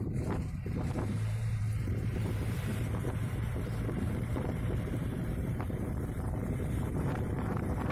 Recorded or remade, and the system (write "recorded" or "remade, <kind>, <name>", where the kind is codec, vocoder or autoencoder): remade, vocoder, BigVGAN v2